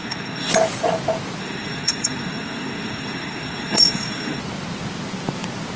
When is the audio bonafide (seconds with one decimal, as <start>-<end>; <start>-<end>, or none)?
0.5-1.4; 4.4-5.8